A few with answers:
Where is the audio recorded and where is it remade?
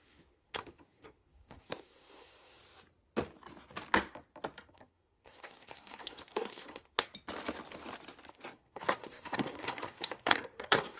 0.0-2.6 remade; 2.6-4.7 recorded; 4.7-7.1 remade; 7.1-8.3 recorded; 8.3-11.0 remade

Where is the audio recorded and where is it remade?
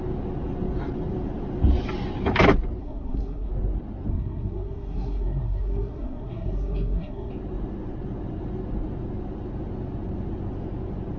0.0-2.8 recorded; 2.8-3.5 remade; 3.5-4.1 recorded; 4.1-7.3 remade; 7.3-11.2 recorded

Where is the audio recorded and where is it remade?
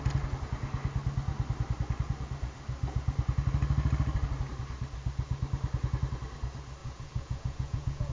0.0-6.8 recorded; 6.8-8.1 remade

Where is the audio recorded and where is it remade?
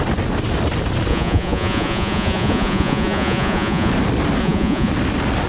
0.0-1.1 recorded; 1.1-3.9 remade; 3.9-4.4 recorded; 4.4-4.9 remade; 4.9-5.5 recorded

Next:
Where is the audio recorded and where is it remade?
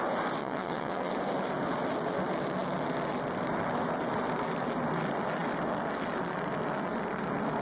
0.0-0.4 recorded; 0.4-1.1 remade; 1.1-7.6 recorded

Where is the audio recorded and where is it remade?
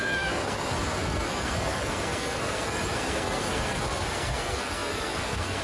0.0-5.6 remade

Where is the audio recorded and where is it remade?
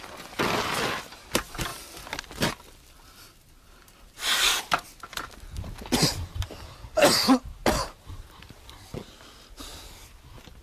0.0-6.0 recorded; 6.0-6.6 remade; 6.6-7.6 recorded; 7.6-8.4 remade; 8.4-10.6 recorded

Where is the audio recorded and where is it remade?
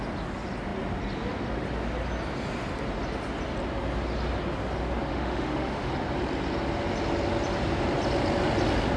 0.0-5.1 recorded; 5.1-5.9 remade; 5.9-9.0 recorded